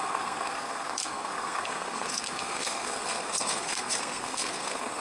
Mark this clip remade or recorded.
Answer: remade